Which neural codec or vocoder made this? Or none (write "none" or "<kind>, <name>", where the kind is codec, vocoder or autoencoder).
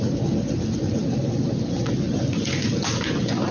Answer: none